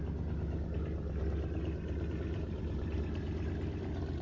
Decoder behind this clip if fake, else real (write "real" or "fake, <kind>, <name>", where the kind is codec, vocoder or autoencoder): fake, vocoder, BigVGAN v2